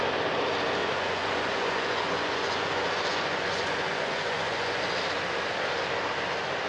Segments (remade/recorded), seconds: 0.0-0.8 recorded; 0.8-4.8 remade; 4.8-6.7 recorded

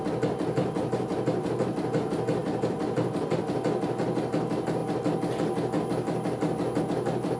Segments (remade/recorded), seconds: 0.0-2.4 recorded; 2.4-3.4 remade; 3.4-7.4 recorded

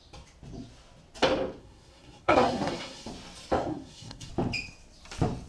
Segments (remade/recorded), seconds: 0.0-1.6 recorded; 1.6-3.1 remade; 3.1-3.7 recorded; 3.7-4.3 remade; 4.3-5.5 recorded

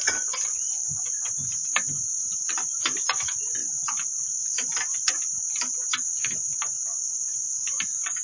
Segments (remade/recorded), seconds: 0.0-8.2 remade

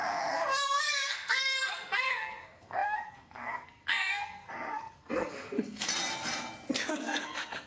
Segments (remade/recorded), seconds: 0.0-5.9 remade; 5.9-6.9 recorded; 6.9-7.7 remade

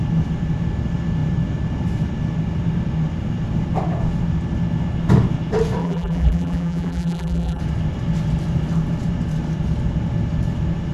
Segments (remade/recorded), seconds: 0.0-5.8 recorded; 5.8-7.6 remade; 7.6-10.9 recorded

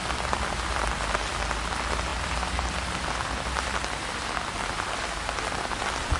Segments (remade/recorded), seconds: 0.0-6.2 recorded

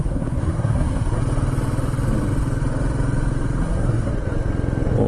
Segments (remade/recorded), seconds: 0.0-1.2 remade; 1.2-3.6 recorded; 3.6-4.1 remade; 4.1-5.1 recorded